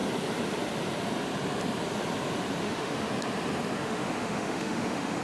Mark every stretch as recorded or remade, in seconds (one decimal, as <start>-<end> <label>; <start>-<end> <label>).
0.0-2.6 recorded; 2.6-3.1 remade; 3.1-3.8 recorded; 3.8-5.2 remade